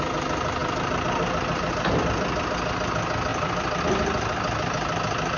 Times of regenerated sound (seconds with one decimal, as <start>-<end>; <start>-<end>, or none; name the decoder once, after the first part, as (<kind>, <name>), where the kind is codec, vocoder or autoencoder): 0.6-1.7 (vocoder, BigVGAN v2); 3.3-3.8